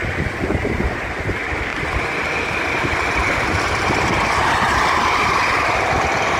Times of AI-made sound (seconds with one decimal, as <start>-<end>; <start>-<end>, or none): 0.7-6.4